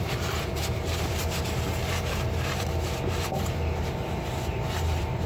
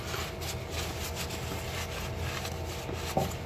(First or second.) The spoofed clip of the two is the first